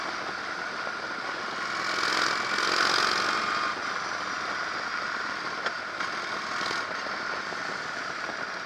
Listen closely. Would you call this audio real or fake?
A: real